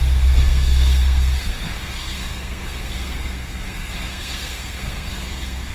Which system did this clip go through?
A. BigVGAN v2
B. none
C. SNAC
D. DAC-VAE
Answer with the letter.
C